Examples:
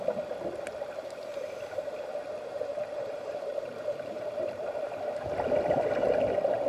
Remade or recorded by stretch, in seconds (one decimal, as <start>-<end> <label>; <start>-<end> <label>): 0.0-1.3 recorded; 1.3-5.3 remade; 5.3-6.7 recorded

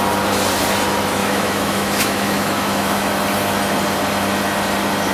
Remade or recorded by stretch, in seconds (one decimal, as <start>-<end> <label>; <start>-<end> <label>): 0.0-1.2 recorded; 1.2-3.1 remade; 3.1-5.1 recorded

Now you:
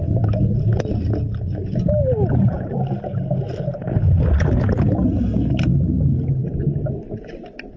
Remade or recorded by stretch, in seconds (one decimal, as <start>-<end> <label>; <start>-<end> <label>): 0.0-7.8 recorded

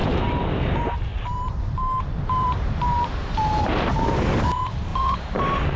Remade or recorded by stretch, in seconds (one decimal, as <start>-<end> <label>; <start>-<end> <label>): 0.0-1.1 recorded; 1.1-3.7 remade; 3.7-4.9 recorded; 4.9-5.8 remade

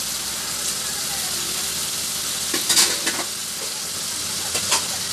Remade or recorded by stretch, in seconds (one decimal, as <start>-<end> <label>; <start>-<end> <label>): 0.0-5.1 recorded

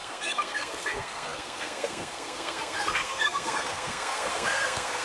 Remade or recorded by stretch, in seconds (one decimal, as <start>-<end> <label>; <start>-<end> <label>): 0.0-5.0 remade

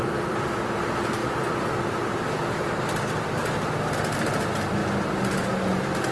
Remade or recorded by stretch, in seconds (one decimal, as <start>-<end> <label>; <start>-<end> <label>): 0.0-1.2 recorded; 1.2-3.9 remade; 3.9-4.8 recorded; 4.8-5.5 remade; 5.5-6.1 recorded